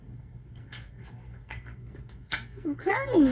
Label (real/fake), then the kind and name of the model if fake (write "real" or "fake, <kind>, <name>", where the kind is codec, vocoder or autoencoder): fake, codec, SNAC